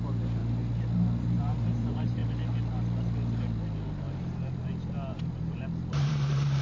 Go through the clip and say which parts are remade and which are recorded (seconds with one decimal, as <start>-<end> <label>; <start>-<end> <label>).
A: 0.0-0.4 remade; 0.4-1.2 recorded; 1.2-2.2 remade; 2.2-6.0 recorded; 6.0-6.6 remade